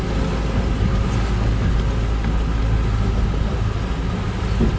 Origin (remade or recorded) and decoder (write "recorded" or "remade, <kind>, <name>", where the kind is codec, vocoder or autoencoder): recorded